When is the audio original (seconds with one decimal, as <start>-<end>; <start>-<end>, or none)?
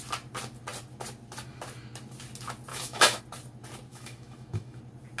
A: 0.0-2.7; 3.2-3.9; 4.8-5.2